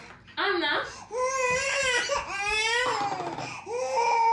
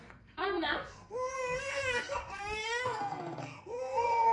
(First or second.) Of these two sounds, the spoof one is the second